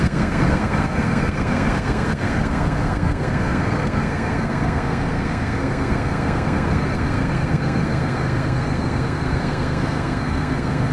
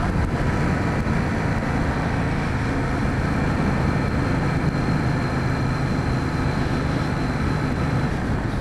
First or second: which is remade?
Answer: first